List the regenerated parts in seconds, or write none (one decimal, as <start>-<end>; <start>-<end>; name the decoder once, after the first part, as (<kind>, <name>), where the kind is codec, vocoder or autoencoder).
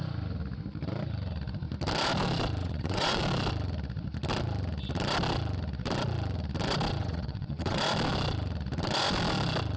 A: 2.6-3.2 (vocoder, WaveNeXt); 7.0-7.8